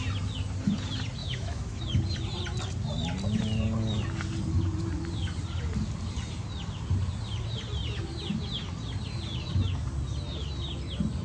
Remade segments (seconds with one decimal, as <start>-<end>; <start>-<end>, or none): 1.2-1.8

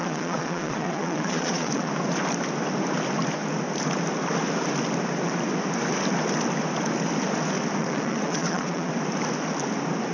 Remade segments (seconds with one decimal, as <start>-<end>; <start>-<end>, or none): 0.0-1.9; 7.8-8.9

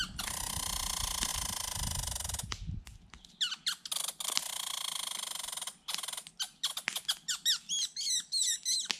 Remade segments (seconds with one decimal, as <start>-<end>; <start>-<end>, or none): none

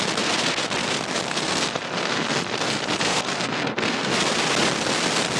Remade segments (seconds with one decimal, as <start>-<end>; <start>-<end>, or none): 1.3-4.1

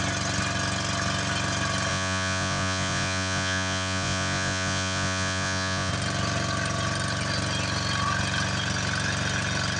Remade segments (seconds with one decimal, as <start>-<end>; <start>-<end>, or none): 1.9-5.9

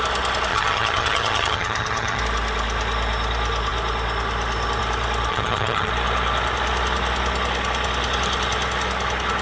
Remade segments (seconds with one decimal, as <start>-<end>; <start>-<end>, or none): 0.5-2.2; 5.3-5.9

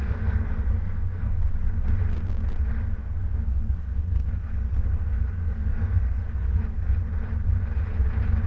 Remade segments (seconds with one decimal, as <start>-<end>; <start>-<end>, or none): 0.0-1.5; 3.0-6.6